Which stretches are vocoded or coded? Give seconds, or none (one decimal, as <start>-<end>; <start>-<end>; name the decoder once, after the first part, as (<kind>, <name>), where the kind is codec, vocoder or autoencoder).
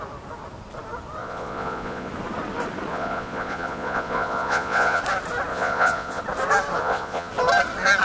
1.2-2.1 (vocoder, Vocos); 2.9-5.0; 5.5-6.2; 6.8-7.3